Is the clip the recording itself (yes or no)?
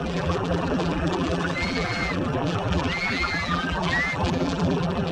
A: no